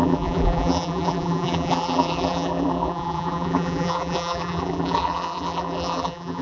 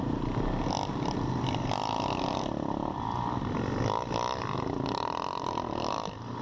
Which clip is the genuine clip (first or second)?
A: second